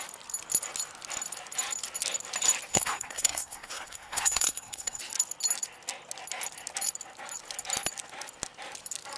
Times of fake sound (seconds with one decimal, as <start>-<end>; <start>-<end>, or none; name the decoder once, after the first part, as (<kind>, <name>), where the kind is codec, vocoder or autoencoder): 2.7-5.0 (codec, SNAC)